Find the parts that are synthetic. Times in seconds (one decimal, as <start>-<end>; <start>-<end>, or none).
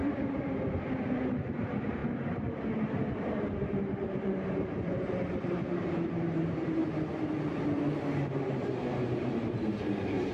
0.0-6.8; 8.5-10.3